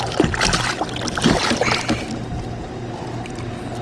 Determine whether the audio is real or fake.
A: real